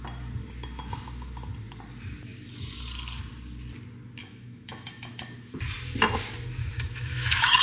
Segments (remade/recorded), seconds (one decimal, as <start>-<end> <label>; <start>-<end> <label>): 0.0-4.2 recorded; 4.2-5.1 remade; 5.1-6.6 recorded; 6.6-7.6 remade